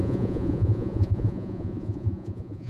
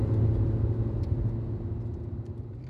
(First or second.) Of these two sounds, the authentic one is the second